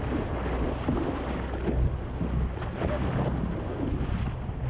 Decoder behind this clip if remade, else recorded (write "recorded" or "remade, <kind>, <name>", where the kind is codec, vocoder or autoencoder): recorded